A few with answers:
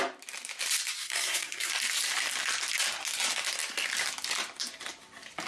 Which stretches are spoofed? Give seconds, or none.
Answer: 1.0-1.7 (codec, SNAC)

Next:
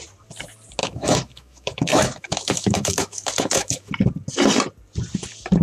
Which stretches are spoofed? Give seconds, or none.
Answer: 0.8-3.9 (autoencoder, DAC-VAE)

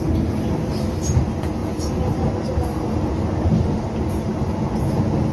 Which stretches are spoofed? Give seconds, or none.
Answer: none

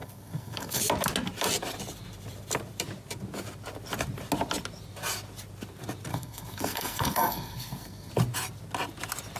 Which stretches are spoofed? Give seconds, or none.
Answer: 0.0-0.8 (codec, SNAC); 6.1-8.1